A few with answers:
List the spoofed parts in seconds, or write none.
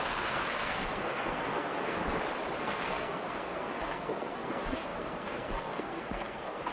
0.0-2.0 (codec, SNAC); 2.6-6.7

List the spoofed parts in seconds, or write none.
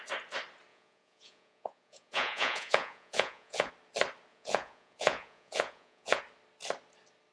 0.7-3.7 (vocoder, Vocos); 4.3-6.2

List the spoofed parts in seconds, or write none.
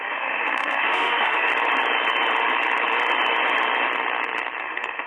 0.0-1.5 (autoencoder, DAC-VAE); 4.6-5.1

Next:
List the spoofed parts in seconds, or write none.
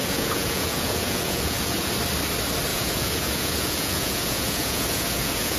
0.0-1.9 (vocoder, Vocos); 2.7-5.6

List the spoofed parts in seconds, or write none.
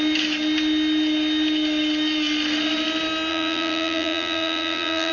3.3-5.1 (vocoder, BigVGAN v2)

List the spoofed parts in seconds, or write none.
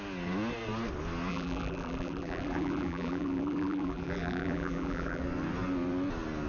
1.3-5.2 (vocoder, BigVGAN v2)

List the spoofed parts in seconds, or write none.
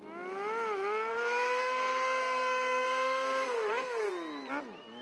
1.1-4.1 (codec, SNAC)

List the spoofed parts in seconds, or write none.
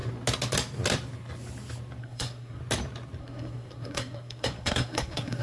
2.0-2.6 (codec, SNAC); 3.2-5.4